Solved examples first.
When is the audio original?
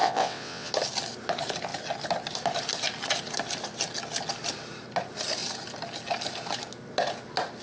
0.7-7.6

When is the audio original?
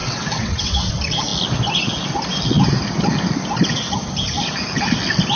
0.9-5.4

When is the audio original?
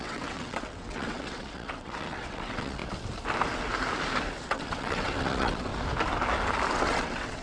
2.8-4.4; 5.7-6.7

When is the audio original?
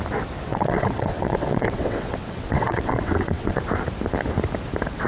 0.0-0.5; 3.6-5.1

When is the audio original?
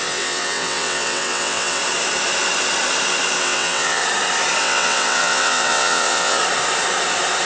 1.8-3.4; 4.0-4.6; 6.4-7.5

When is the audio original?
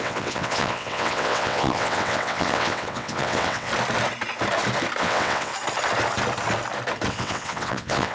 3.7-5.0; 5.5-7.1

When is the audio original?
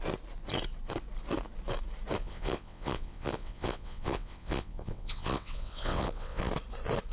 0.0-2.2; 6.5-7.1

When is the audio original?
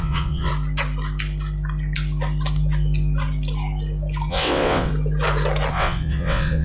0.5-4.3; 4.9-5.7